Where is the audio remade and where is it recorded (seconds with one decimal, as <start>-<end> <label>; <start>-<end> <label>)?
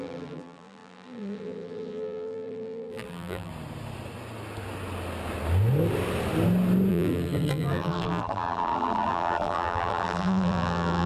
0.0-3.5 remade; 3.5-6.9 recorded; 6.9-11.1 remade